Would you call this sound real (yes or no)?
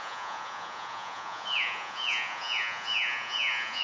no